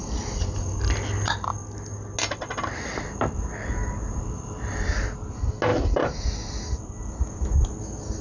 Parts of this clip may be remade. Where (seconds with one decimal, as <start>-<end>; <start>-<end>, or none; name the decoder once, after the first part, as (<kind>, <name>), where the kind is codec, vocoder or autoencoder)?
none